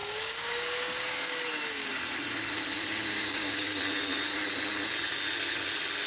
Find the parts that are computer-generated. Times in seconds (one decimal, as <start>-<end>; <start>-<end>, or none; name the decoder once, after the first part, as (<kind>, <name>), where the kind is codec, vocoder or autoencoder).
0.0-1.9 (codec, DAC); 3.0-3.8